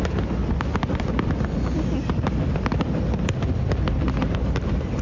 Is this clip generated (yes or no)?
no